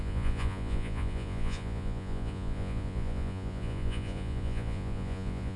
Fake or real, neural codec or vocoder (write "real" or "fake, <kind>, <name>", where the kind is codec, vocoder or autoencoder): fake, vocoder, Vocos